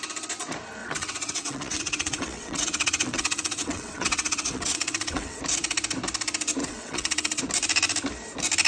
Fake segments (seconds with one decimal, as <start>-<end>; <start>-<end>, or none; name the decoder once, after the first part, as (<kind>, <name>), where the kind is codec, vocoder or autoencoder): 0.8-5.4 (vocoder, WaveNeXt); 6.6-7.4